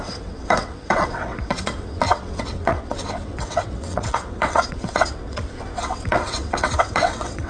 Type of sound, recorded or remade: remade